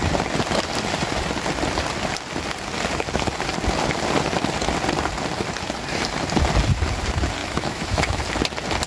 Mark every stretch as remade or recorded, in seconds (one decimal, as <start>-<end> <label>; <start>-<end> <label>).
0.0-7.4 recorded; 7.4-8.2 remade; 8.2-8.9 recorded